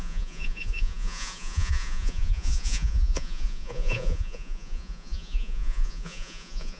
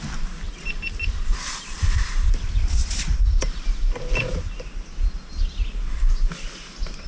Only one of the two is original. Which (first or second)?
second